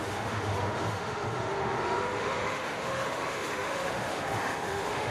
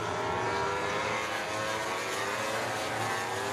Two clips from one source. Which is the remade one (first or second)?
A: first